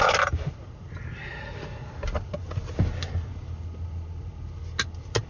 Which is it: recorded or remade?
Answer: recorded